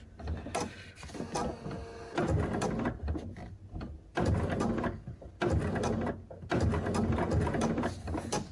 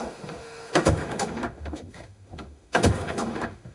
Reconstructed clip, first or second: second